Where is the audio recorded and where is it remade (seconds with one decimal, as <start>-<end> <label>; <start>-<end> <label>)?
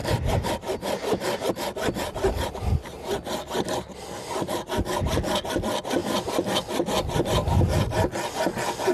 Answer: 0.0-1.5 remade; 1.5-6.0 recorded; 6.0-7.2 remade; 7.2-8.9 recorded